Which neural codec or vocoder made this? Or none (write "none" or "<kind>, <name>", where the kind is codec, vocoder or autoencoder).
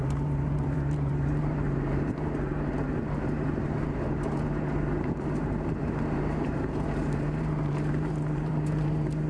vocoder, BigVGAN v2